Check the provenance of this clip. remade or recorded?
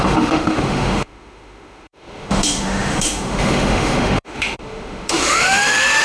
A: remade